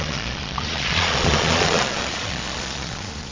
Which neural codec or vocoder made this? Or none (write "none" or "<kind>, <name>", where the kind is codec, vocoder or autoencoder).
vocoder, Vocos